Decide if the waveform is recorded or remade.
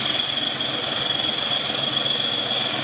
recorded